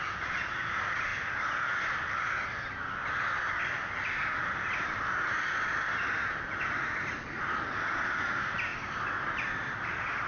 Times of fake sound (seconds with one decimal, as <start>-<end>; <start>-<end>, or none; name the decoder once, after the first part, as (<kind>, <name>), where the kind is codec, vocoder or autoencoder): none